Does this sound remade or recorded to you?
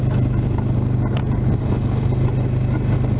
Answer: recorded